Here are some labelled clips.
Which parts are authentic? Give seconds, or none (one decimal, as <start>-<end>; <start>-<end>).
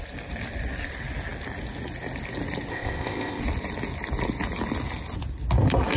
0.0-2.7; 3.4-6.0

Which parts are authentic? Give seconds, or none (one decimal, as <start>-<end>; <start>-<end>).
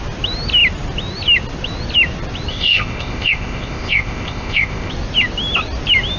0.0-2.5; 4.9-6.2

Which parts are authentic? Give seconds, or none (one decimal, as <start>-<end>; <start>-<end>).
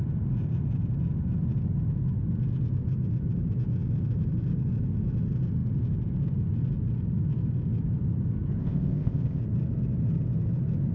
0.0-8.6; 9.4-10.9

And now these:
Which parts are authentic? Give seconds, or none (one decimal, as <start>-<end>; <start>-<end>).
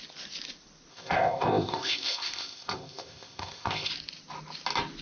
0.0-0.9; 3.9-5.0